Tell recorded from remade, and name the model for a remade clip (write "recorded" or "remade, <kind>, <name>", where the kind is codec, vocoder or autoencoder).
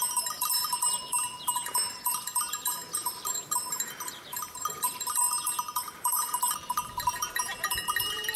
remade, vocoder, BigVGAN v2